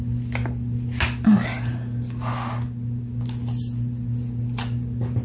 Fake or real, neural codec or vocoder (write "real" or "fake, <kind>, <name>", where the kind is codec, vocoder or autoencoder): real